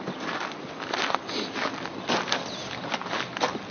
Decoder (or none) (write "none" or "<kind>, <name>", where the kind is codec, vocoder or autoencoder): none